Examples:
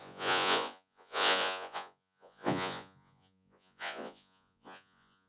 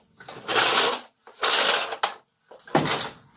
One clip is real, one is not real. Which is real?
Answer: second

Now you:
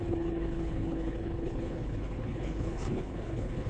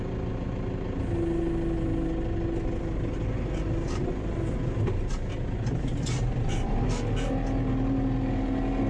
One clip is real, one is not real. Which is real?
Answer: second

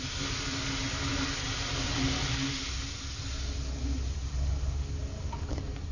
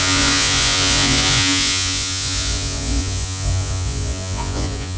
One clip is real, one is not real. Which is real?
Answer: first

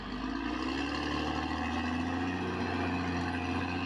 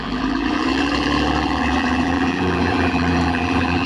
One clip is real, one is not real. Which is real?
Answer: first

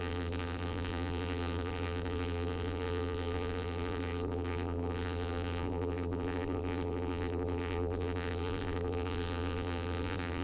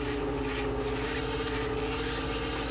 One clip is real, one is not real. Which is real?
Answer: second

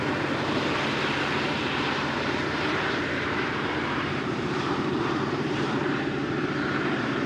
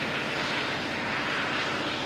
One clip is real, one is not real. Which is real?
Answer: second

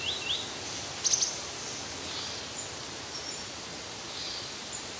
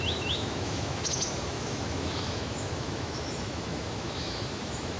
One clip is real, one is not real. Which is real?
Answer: first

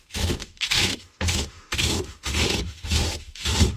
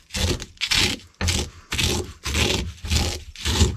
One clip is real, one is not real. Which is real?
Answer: second